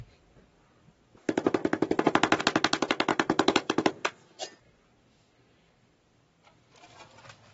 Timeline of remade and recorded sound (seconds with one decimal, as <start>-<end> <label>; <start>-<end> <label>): 0.0-3.1 recorded; 3.1-3.9 remade; 3.9-7.5 recorded